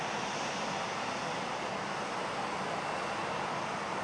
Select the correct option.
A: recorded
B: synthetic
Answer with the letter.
A